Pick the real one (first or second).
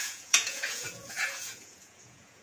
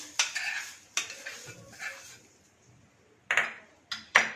second